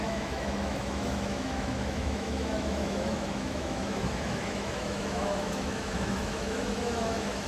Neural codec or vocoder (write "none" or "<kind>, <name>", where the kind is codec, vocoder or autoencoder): autoencoder, DAC-VAE